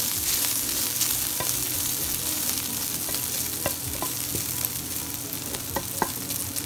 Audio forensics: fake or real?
real